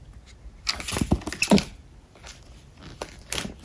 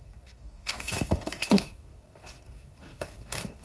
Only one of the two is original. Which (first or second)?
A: first